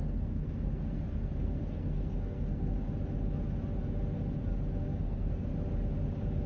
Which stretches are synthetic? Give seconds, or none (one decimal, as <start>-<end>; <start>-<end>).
0.0-2.7; 4.8-5.5